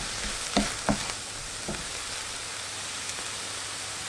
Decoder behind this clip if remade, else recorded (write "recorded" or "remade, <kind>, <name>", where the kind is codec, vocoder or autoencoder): recorded